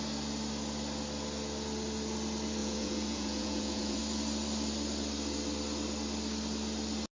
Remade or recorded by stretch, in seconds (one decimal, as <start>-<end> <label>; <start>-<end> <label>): 0.0-2.6 recorded; 2.6-4.0 remade; 4.0-7.2 recorded